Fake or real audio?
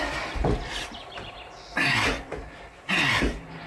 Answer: real